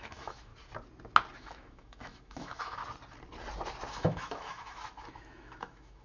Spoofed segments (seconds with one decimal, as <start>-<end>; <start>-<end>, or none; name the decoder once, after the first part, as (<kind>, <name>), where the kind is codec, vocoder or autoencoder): 0.0-0.5 (autoencoder, DAC-VAE); 1.4-2.8; 3.9-6.0